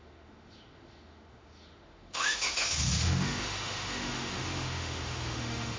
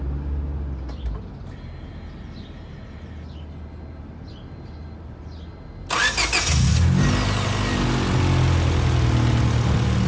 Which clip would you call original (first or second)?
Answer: second